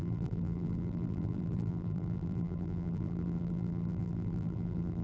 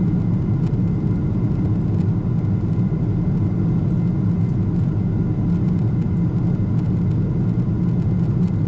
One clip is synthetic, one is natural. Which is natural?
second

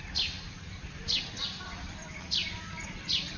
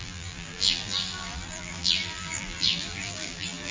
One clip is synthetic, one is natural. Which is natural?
first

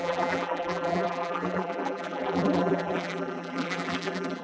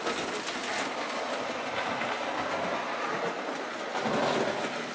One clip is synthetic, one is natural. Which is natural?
second